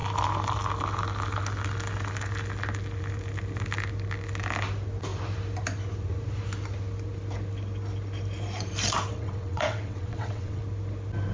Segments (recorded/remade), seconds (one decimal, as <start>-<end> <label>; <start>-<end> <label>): 0.0-9.1 recorded; 9.1-10.6 remade; 10.6-11.3 recorded